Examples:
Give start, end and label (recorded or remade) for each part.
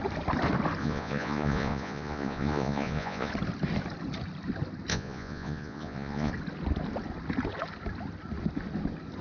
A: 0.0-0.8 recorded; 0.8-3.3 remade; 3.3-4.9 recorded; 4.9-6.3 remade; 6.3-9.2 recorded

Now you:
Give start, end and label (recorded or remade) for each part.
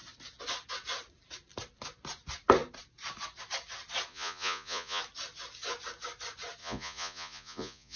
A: 0.0-4.1 recorded; 4.1-5.0 remade; 5.0-6.6 recorded; 6.6-8.0 remade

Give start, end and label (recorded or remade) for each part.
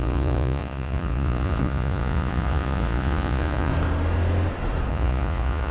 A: 0.0-3.7 remade; 3.7-4.9 recorded; 4.9-5.7 remade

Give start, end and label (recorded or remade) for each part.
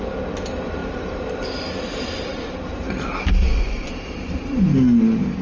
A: 0.0-3.4 recorded; 3.4-3.9 remade; 3.9-5.4 recorded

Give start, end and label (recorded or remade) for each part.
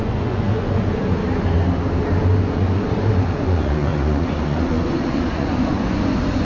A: 0.0-1.2 remade; 1.2-2.4 recorded; 2.4-6.4 remade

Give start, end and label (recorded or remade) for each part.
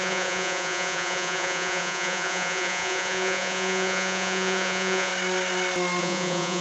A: 0.0-5.1 remade; 5.1-6.0 recorded; 6.0-6.6 remade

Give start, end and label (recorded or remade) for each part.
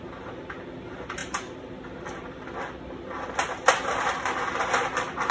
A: 0.0-5.3 recorded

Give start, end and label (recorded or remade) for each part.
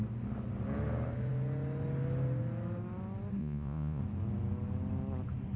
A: 0.0-3.4 recorded; 3.4-4.0 remade; 4.0-5.6 recorded